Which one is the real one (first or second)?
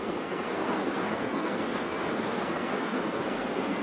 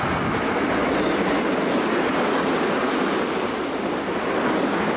second